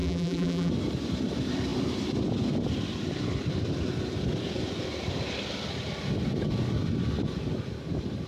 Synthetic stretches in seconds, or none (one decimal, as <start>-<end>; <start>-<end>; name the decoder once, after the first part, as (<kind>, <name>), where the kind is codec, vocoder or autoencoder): 0.0-0.7 (vocoder, BigVGAN v2)